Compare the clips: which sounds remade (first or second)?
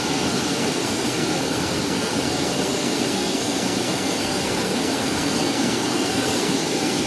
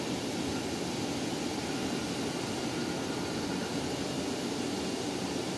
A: first